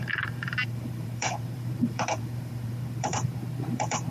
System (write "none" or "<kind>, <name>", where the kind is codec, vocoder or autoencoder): vocoder, BigVGAN v2